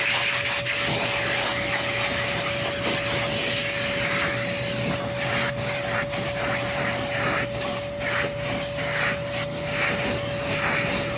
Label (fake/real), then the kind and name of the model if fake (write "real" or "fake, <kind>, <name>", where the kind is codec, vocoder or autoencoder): real